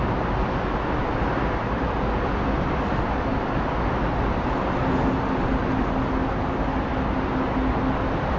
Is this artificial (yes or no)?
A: no